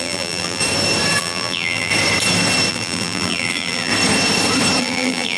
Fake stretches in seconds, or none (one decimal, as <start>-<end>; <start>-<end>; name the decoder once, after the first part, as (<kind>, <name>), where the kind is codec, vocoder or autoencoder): 0.0-0.6 (vocoder, BigVGAN v2); 1.2-1.9; 2.7-3.9; 4.8-5.4